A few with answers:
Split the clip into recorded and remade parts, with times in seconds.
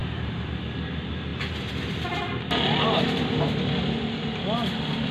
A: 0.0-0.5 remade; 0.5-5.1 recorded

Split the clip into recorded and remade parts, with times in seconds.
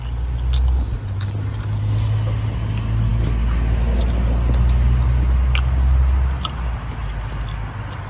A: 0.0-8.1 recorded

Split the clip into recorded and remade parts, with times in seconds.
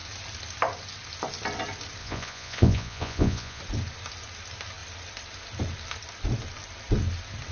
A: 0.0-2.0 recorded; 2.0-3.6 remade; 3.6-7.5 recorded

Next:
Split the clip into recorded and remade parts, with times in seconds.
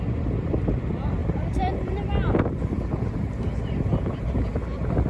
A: 0.0-1.2 recorded; 1.2-4.3 remade; 4.3-5.1 recorded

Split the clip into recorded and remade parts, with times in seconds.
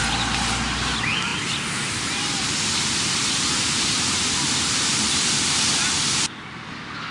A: 0.0-7.1 recorded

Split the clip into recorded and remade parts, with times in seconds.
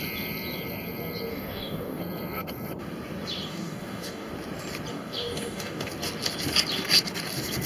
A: 0.0-1.3 recorded; 1.3-2.0 remade; 2.0-3.5 recorded; 3.5-4.3 remade; 4.3-4.9 recorded; 4.9-5.9 remade; 5.9-7.7 recorded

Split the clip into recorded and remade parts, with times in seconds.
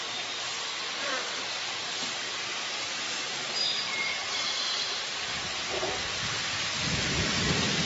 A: 0.0-1.8 recorded; 1.8-5.9 remade; 5.9-7.9 recorded